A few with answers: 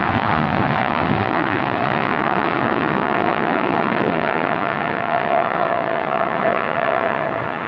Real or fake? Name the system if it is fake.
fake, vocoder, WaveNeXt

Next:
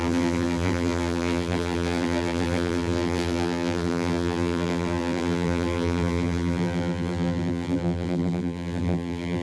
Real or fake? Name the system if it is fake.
fake, vocoder, BigVGAN v2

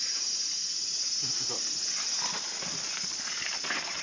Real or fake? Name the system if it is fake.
real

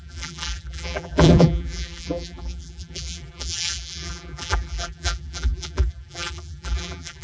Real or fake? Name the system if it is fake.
fake, vocoder, BigVGAN v2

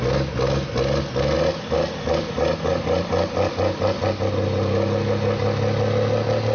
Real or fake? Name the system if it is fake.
real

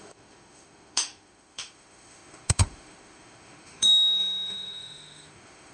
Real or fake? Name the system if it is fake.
fake, autoencoder, DAC-VAE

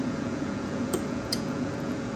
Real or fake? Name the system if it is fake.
fake, vocoder, Vocos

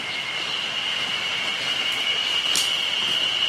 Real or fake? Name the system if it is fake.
real